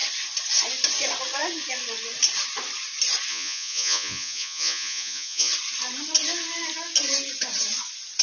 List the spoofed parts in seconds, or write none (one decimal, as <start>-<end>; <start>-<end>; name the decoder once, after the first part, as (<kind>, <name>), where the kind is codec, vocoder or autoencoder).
3.3-5.5 (vocoder, Vocos)